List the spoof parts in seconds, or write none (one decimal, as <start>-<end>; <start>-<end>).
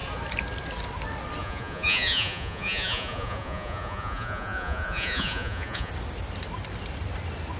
1.4-5.9